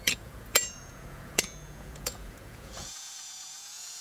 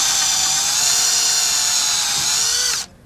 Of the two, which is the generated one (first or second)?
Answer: first